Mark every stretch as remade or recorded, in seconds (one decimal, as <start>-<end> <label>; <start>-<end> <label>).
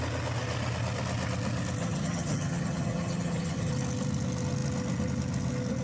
0.0-1.8 recorded; 1.8-3.7 remade; 3.7-5.8 recorded